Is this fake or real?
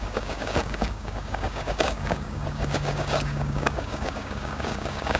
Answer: fake